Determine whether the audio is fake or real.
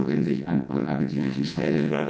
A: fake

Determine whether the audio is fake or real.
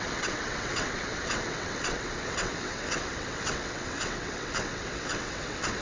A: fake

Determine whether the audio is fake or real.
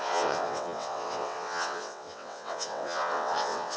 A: fake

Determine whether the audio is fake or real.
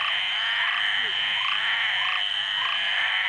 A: real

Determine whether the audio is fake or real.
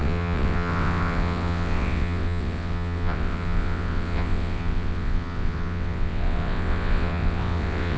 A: fake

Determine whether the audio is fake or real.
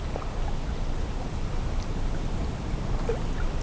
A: real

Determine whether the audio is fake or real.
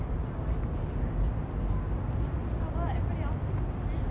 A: real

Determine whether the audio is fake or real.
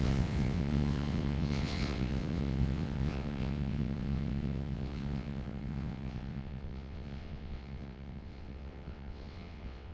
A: fake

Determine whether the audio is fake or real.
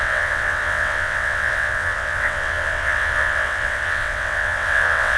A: fake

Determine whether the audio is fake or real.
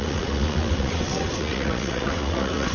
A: fake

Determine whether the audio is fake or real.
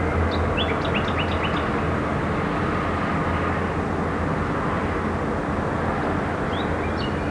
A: real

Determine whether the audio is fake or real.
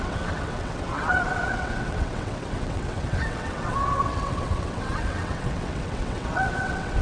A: fake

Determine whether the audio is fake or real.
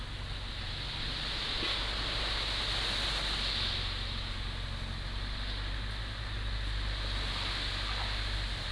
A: real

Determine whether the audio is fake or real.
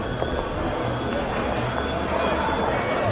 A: real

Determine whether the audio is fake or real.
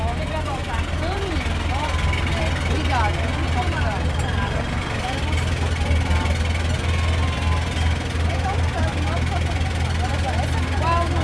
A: real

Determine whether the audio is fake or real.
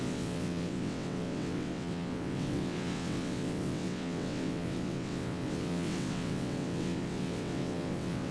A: fake